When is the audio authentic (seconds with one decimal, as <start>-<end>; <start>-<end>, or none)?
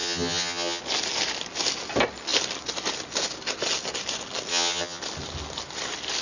0.8-4.5; 5.0-6.2